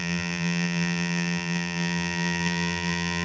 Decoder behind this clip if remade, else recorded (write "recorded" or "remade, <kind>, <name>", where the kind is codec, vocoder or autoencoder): remade, vocoder, BigVGAN v2